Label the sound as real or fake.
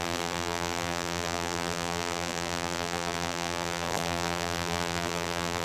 fake